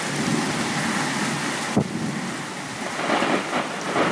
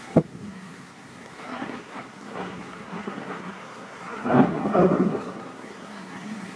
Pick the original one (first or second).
first